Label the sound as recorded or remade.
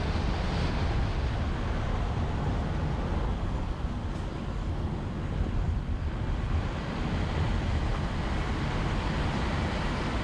recorded